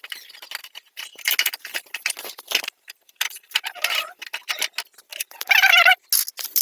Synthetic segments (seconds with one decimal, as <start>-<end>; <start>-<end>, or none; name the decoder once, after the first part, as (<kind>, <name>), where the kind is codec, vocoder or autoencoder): 0.6-4.6 (vocoder, BigVGAN v2); 5.1-5.9